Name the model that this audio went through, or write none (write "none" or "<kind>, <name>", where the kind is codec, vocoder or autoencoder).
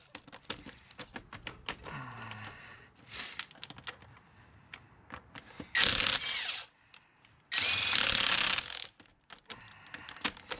none